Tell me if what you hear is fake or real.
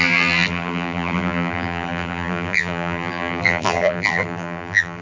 fake